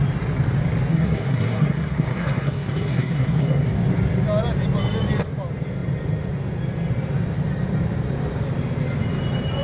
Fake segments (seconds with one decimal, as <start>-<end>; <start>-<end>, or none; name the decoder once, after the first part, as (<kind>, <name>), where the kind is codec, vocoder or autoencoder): 0.9-3.7 (codec, SNAC)